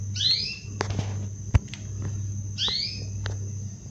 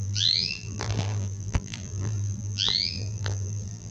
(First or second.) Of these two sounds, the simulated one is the second